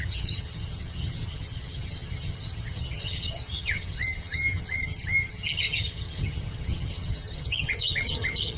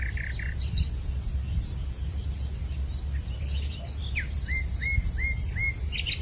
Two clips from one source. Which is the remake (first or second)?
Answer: first